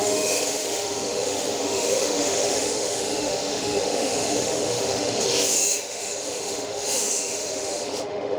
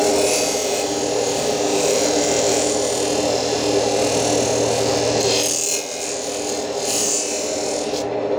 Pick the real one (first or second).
second